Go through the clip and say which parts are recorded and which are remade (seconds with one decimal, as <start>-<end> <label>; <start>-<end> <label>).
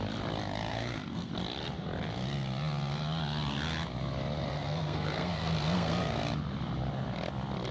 0.0-0.7 recorded; 0.7-1.3 remade; 1.3-4.5 recorded; 4.5-6.2 remade; 6.2-7.7 recorded